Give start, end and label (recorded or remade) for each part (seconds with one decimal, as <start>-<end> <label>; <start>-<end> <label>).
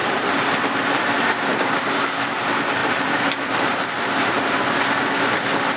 0.0-1.6 remade; 1.6-2.8 recorded; 2.8-4.4 remade; 4.4-5.8 recorded